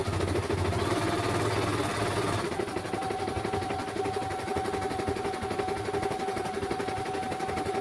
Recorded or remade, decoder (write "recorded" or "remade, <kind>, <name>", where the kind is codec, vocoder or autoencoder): recorded